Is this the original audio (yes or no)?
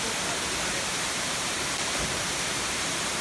no